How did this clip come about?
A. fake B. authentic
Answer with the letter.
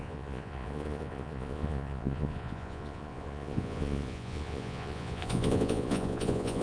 A